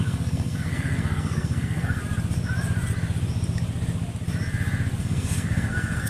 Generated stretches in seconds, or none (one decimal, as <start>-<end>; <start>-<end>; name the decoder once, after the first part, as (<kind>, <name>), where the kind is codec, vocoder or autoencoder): 0.0-2.0 (codec, SNAC); 5.0-6.1